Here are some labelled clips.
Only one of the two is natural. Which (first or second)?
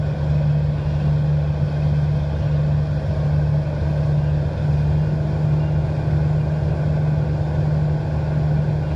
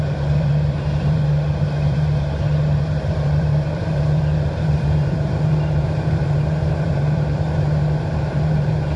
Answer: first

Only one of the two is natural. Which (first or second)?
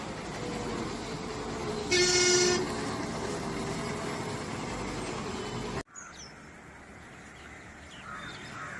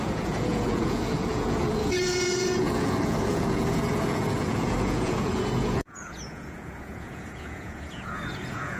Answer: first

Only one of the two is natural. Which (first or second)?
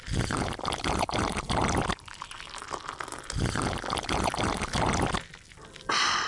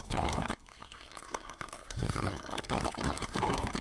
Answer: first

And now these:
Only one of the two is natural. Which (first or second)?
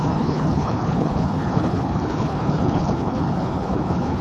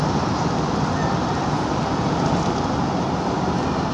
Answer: second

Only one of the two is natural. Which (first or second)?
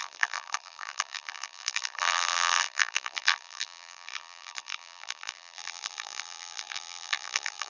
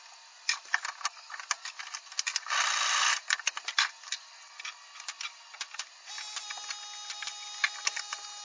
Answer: second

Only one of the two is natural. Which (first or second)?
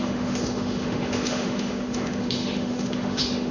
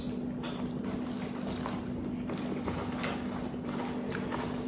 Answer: second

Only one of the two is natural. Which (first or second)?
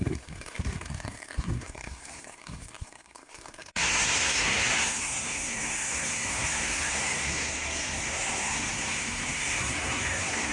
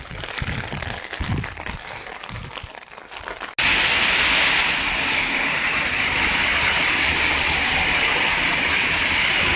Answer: second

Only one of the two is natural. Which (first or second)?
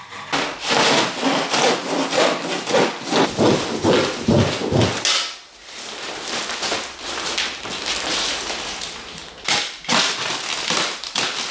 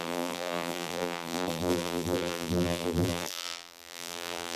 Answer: first